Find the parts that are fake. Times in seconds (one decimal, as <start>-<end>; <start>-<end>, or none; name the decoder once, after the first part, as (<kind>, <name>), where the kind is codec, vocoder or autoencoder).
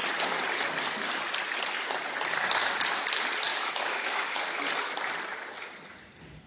3.5-4.4 (autoencoder, DAC-VAE)